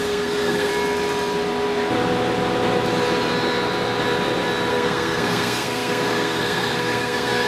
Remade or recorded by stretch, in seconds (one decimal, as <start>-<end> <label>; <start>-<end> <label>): 0.0-0.7 remade; 0.7-4.7 recorded; 4.7-7.5 remade